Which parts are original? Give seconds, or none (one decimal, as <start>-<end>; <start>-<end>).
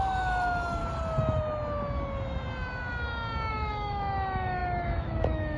0.8-3.5